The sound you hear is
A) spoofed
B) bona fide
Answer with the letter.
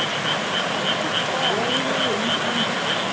B